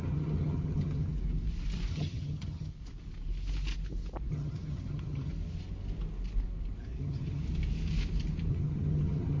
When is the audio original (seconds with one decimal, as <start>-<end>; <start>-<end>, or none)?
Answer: 1.1-1.9; 2.7-4.3; 5.3-7.0; 7.4-8.5